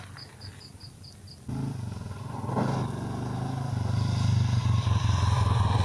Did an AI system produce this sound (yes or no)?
no